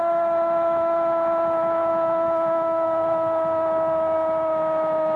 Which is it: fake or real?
fake